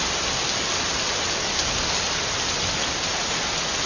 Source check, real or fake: real